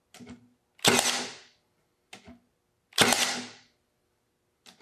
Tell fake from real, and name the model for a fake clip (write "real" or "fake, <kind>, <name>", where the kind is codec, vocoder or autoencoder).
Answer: real